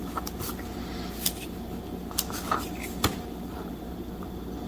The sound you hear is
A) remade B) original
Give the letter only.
B